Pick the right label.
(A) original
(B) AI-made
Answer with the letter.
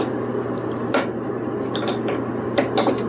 A